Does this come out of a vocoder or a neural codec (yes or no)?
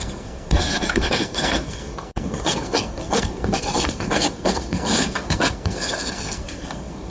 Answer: yes